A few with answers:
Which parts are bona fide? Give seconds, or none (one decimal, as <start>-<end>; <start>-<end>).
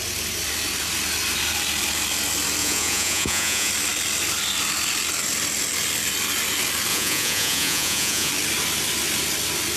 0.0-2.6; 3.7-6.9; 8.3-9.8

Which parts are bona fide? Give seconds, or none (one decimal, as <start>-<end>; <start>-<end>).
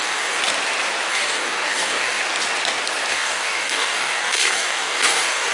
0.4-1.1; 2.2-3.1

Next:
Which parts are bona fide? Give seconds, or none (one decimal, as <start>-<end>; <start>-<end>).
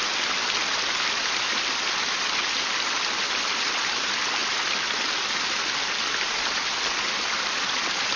0.0-8.2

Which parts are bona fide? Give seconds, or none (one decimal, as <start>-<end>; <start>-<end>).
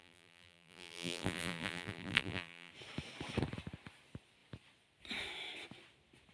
2.7-6.3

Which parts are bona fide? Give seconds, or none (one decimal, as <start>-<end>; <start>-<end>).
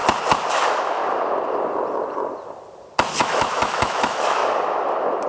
0.0-0.5; 1.0-3.2; 4.4-5.3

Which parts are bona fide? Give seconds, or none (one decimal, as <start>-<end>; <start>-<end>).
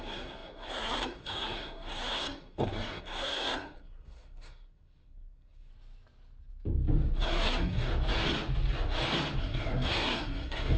5.7-7.2; 7.9-9.4